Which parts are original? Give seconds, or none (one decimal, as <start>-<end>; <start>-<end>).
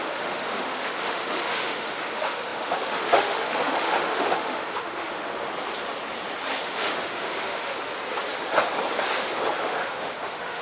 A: 5.5-6.6; 7.9-9.6